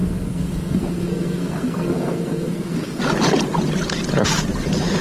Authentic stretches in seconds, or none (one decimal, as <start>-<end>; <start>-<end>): 3.0-5.0